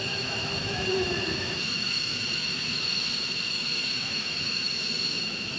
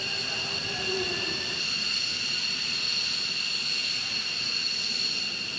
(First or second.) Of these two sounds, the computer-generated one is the first